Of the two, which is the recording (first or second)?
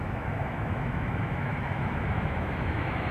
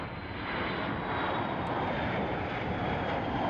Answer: second